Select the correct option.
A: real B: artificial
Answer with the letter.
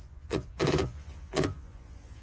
B